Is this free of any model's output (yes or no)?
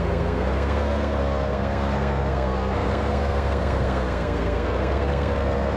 no